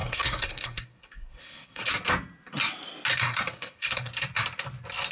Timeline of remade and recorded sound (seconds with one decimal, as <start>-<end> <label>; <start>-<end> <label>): 0.0-1.9 remade; 1.9-3.1 recorded; 3.1-4.1 remade; 4.1-5.1 recorded